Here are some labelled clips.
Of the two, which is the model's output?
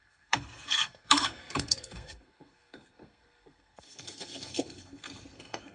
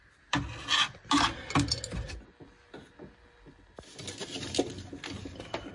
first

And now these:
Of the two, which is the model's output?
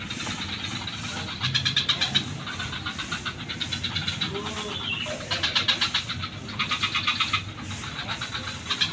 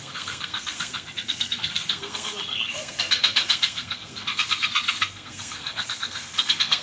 second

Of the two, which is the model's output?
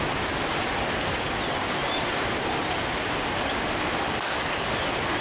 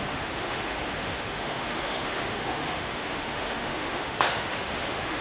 second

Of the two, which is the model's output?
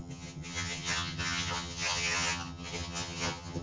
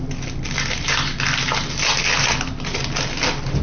first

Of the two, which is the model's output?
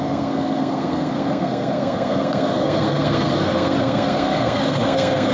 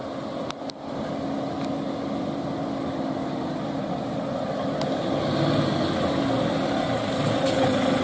first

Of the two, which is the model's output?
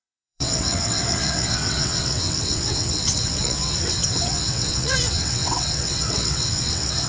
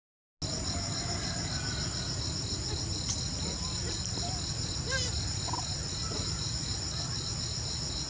first